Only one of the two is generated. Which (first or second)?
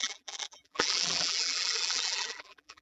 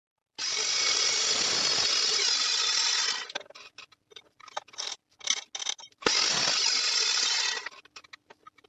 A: first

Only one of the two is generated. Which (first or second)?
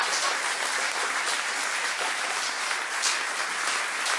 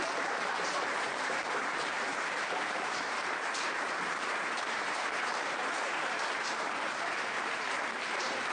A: second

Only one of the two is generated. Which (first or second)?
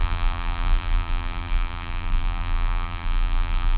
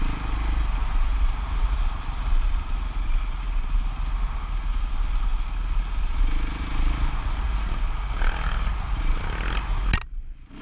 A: first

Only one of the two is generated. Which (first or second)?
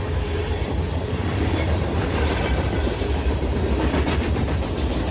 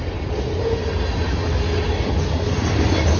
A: first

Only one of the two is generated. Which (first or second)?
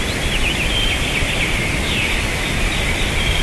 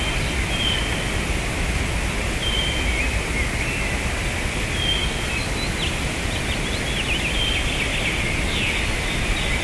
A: first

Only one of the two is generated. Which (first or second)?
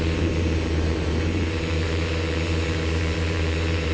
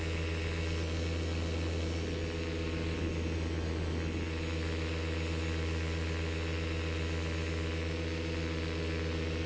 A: first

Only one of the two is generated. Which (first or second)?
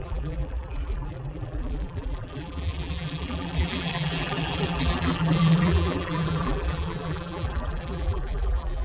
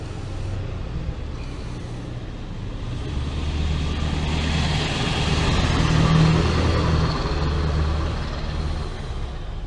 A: first